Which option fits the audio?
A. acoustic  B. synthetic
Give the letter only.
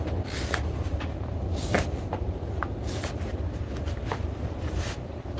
A